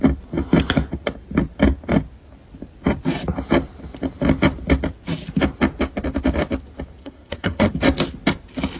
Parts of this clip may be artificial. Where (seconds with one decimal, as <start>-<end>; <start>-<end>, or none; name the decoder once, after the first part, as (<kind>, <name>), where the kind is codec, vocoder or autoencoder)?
7.0-7.7 (codec, SNAC)

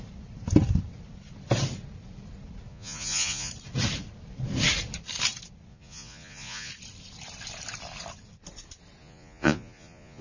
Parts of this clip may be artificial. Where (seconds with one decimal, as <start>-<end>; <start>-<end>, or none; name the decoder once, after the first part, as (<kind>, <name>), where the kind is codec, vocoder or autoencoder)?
2.7-3.5 (vocoder, Vocos); 5.7-6.7; 9.0-10.2

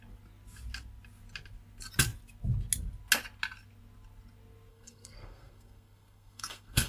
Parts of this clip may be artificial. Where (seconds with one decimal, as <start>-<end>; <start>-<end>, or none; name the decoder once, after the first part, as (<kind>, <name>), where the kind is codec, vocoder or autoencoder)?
4.7-6.9 (codec, SNAC)

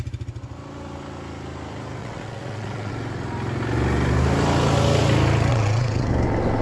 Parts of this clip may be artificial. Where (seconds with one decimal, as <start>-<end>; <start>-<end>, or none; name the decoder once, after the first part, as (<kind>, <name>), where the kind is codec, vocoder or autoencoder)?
2.0-2.9 (vocoder, WaveNeXt); 5.5-6.1

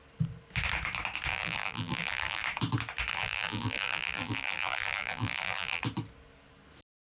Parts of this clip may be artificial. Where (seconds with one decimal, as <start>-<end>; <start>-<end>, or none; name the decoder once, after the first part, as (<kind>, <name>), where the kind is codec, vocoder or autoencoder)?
1.3-2.4 (vocoder, BigVGAN v2); 3.1-5.8